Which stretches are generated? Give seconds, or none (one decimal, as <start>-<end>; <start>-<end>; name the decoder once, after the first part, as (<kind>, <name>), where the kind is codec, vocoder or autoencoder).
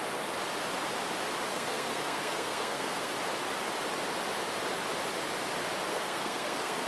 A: 1.5-3.1 (codec, SNAC); 5.9-6.9